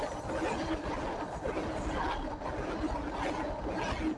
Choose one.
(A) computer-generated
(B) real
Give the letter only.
B